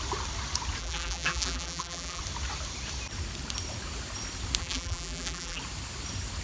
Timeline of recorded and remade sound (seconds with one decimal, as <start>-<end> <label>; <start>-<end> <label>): 0.0-0.8 recorded; 0.8-2.2 remade; 2.2-4.6 recorded; 4.6-5.6 remade; 5.6-6.4 recorded